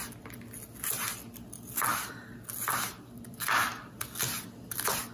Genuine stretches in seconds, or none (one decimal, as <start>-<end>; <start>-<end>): 0.0-5.1